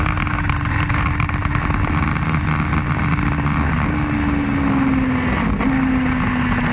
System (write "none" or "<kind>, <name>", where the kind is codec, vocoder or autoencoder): none